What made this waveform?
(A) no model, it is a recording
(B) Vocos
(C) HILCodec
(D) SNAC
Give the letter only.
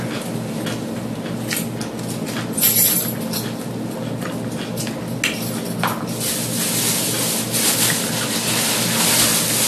A